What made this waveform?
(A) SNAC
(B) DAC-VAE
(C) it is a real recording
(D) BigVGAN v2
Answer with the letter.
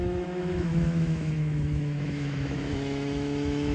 B